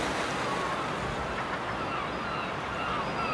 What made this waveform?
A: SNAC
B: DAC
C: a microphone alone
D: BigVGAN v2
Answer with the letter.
C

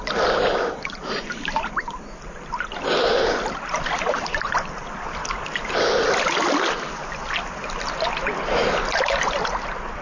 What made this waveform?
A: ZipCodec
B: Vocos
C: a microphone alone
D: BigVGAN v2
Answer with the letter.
D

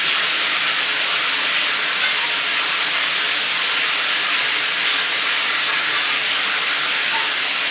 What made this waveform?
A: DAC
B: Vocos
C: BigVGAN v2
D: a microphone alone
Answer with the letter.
D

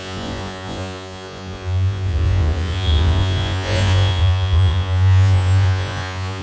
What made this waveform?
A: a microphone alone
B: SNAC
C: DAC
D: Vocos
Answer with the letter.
D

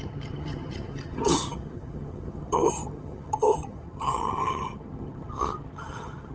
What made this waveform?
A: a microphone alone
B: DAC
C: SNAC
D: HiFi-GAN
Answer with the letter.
D